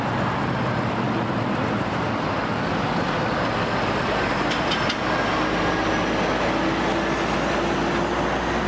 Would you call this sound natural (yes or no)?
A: yes